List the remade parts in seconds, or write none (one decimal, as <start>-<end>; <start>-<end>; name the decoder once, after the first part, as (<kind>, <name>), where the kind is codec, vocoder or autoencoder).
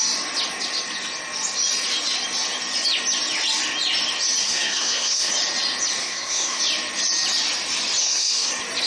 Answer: 4.4-5.3 (codec, SNAC); 6.0-6.6; 8.0-8.5